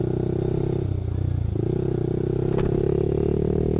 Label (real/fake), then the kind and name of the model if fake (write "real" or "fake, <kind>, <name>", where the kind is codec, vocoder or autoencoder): real